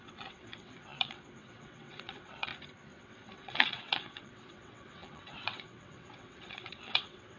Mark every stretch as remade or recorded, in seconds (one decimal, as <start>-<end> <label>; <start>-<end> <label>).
0.0-2.5 remade; 2.5-3.0 recorded; 3.0-7.4 remade